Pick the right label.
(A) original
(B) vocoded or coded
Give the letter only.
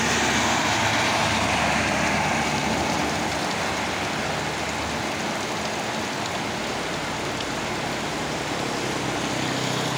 A